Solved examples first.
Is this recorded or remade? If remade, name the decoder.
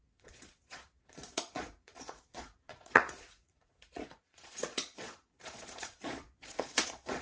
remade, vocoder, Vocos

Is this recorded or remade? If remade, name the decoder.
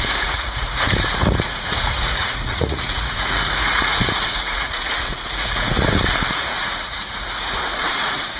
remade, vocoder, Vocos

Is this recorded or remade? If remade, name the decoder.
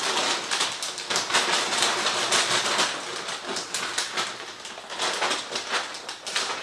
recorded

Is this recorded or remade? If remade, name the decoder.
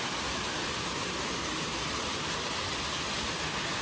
recorded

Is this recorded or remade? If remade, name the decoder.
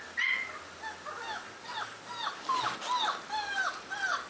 recorded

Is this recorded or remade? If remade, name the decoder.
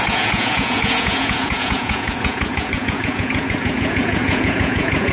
remade, vocoder, Vocos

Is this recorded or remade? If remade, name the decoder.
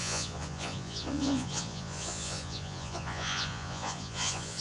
remade, vocoder, Vocos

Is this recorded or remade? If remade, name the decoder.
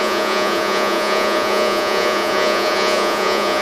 remade, vocoder, Vocos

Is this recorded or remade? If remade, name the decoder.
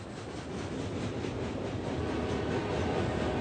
recorded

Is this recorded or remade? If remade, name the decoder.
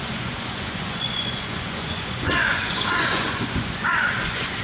remade, vocoder, Vocos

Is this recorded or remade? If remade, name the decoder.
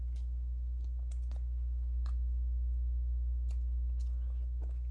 recorded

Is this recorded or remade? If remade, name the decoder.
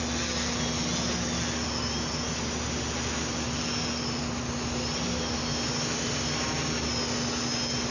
recorded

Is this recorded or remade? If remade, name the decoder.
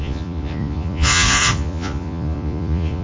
remade, vocoder, Vocos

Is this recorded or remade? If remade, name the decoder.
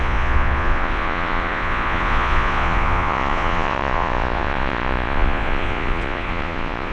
remade, vocoder, Vocos